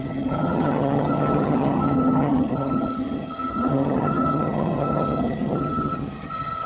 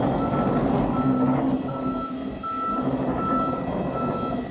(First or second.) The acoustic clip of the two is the second